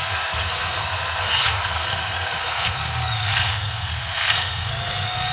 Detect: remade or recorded remade